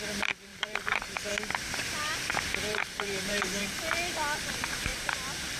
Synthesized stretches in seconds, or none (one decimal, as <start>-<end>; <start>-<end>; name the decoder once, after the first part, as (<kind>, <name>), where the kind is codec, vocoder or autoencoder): 0.5-1.3 (vocoder, BigVGAN v2); 2.7-3.6